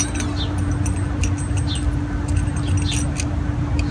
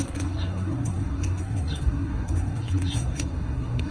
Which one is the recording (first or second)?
first